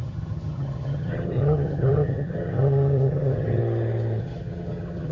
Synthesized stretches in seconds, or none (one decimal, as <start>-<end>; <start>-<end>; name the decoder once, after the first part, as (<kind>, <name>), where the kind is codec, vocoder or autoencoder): 0.0-3.6 (vocoder, HiFi-GAN); 4.2-5.1